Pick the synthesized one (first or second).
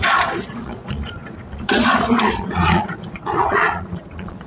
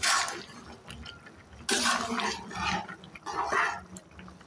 first